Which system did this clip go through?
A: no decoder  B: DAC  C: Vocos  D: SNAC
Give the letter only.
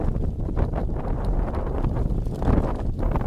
A